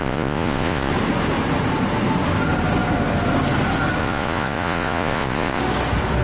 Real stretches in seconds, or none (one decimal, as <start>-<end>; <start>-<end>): 0.9-4.0; 5.6-6.2